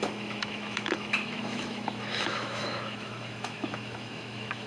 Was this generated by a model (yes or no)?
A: yes